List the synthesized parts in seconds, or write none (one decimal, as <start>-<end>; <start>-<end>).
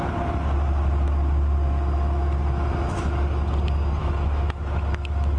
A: 4.0-5.4